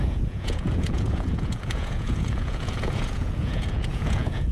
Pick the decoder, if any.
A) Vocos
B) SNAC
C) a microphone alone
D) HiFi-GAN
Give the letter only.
A